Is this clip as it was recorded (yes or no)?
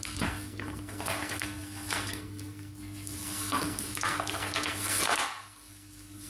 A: no